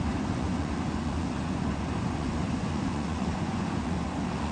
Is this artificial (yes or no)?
yes